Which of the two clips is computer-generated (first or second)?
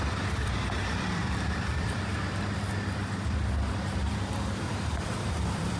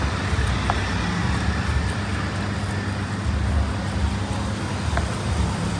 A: first